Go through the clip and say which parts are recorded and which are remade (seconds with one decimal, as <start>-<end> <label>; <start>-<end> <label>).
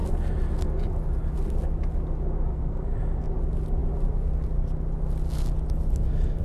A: 0.0-2.5 recorded; 2.5-3.0 remade; 3.0-6.4 recorded